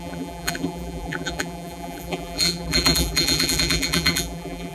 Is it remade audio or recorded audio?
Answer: remade